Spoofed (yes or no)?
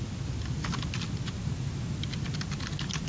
no